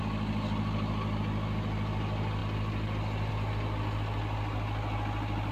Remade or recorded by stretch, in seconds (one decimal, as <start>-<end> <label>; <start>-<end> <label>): 0.0-2.4 recorded; 2.4-3.3 remade; 3.3-5.5 recorded